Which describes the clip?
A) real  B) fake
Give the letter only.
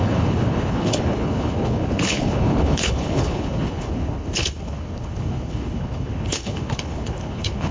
B